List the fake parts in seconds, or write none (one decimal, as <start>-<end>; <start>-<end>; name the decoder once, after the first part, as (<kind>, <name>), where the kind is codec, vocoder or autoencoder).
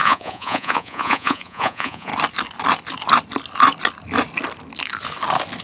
0.0-2.1 (vocoder, Vocos)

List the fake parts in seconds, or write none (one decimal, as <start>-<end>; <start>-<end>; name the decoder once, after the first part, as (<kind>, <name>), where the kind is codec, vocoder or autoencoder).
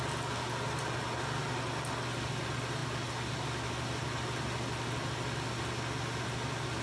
none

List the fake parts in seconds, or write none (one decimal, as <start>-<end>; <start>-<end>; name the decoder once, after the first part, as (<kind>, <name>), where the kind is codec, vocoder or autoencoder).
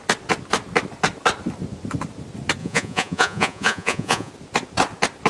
2.6-4.3 (vocoder, Vocos)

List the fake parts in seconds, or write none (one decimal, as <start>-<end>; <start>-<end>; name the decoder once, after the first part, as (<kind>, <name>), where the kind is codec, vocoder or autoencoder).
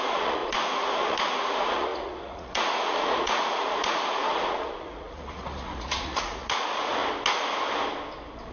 0.0-7.0 (vocoder, Vocos)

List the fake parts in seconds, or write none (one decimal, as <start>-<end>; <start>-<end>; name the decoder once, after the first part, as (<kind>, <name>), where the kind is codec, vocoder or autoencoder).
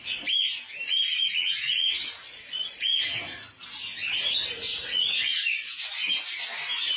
1.1-3.6 (vocoder, Vocos); 4.7-5.4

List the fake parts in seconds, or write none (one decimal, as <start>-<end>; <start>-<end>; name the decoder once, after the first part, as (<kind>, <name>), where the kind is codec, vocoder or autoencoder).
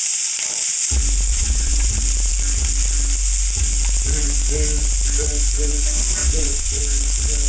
1.3-1.9 (vocoder, Vocos); 6.2-6.8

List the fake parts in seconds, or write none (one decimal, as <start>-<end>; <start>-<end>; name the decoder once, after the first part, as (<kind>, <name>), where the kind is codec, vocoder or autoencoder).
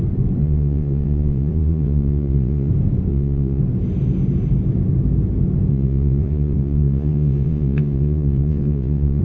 0.4-2.7 (vocoder, Vocos); 3.1-3.6; 5.7-9.2